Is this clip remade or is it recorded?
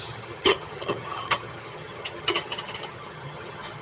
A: remade